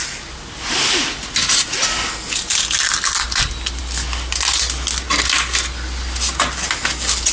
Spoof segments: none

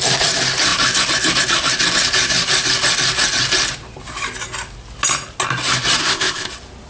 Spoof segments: 6.0-6.5 (codec, ZipCodec)